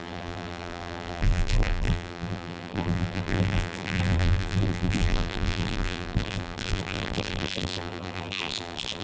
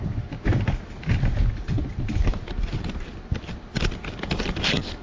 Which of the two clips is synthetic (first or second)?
first